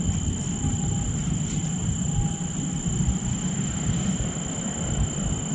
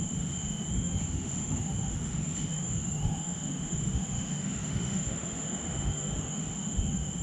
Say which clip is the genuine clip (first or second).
first